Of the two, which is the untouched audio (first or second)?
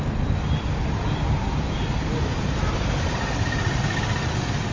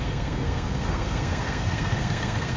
first